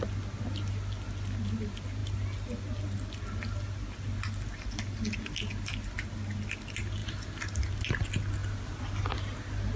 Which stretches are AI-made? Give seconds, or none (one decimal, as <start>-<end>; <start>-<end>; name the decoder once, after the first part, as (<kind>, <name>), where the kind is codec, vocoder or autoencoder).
none